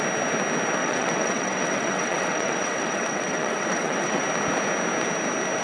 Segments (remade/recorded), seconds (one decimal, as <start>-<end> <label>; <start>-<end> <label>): 0.0-0.8 recorded; 0.8-4.2 remade; 4.2-5.6 recorded